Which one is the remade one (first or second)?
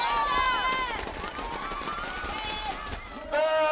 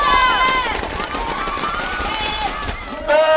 second